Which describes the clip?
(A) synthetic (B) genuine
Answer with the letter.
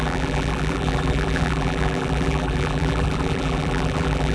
A